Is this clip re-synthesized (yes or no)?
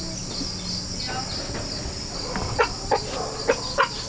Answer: no